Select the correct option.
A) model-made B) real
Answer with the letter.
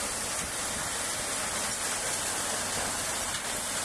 A